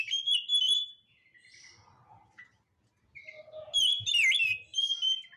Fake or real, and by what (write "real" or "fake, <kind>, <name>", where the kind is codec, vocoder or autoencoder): real